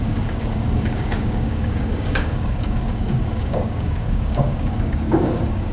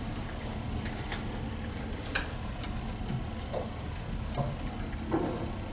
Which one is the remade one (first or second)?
first